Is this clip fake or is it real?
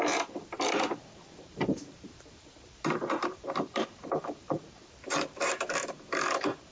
fake